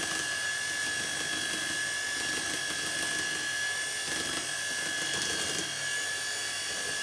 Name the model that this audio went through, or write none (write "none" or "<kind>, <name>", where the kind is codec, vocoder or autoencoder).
none